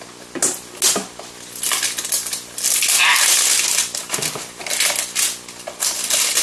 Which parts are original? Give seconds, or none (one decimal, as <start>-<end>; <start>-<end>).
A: 0.0-6.4